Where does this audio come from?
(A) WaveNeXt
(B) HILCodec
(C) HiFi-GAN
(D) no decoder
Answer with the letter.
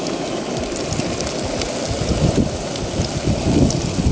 D